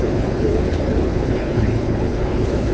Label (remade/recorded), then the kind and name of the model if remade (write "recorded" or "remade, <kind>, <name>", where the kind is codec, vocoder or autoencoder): remade, codec, HILCodec